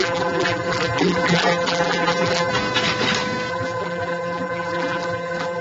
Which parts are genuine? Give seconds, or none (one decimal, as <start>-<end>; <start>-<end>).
2.5-3.5